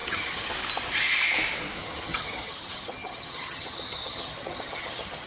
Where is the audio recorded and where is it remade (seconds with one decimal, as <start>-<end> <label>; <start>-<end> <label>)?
0.0-0.5 remade; 0.5-1.8 recorded; 1.8-5.3 remade